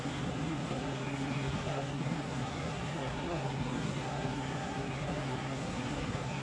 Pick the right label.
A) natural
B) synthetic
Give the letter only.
B